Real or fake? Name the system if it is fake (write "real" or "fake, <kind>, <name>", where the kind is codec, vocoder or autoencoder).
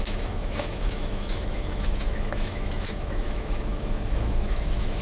fake, autoencoder, DAC-VAE